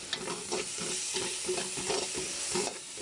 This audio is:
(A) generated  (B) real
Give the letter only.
B